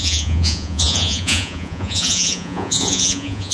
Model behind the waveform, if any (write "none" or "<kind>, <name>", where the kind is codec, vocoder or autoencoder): vocoder, Vocos